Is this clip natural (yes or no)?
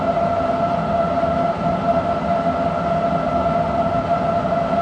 yes